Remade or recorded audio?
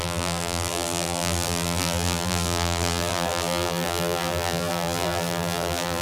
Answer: remade